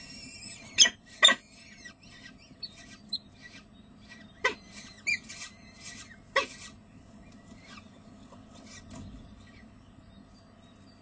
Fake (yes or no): no